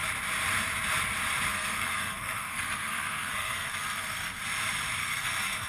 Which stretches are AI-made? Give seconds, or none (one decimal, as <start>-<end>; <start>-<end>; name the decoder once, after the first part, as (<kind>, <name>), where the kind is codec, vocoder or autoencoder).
1.5-4.4 (codec, SNAC); 5.0-5.7